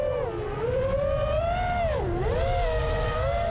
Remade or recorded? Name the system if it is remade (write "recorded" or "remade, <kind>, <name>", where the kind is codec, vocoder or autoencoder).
recorded